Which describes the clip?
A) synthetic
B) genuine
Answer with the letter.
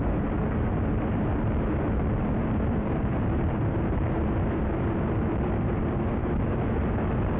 A